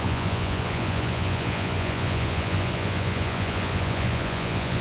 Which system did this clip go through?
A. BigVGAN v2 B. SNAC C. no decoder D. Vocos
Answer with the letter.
D